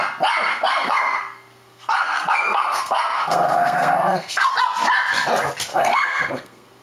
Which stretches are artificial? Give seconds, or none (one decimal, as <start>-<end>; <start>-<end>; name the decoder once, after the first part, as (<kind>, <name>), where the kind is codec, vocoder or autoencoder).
0.5-4.5 (codec, SNAC); 5.7-6.8